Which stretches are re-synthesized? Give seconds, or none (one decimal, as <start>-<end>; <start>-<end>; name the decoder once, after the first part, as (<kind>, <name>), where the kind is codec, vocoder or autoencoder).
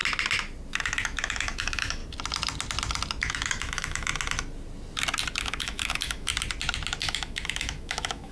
0.7-2.0 (autoencoder, DAC-VAE); 3.2-4.1; 5.4-6.3; 7.0-8.3